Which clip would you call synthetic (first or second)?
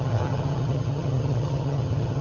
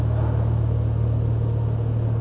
first